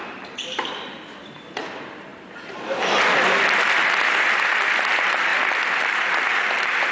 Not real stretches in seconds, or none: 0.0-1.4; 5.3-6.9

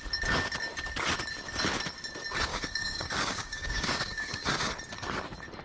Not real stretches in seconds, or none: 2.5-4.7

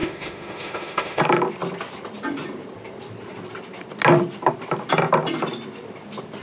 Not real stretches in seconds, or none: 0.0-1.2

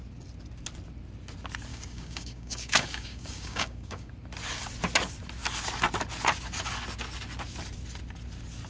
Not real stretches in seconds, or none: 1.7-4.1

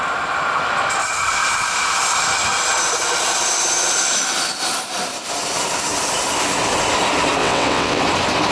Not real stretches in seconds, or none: 7.4-8.0